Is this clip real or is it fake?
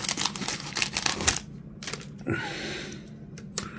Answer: real